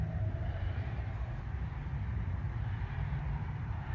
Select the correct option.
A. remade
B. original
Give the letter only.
A